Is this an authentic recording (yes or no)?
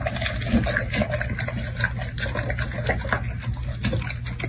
yes